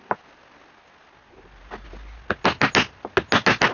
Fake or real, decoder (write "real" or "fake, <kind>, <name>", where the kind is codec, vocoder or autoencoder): real